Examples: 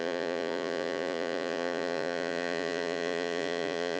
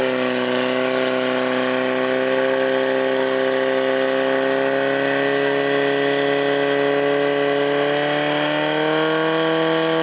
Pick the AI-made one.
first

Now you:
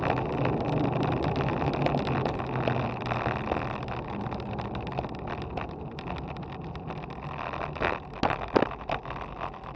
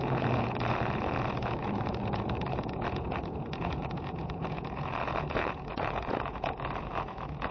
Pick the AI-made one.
second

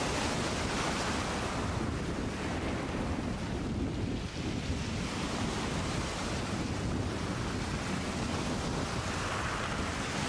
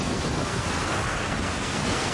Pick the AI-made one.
second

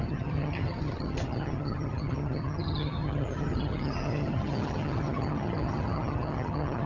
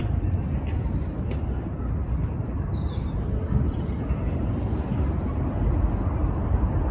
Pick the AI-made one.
first